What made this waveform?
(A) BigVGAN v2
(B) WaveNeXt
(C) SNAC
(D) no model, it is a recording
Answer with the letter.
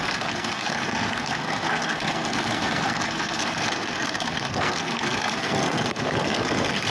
C